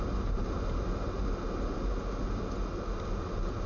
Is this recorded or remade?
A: recorded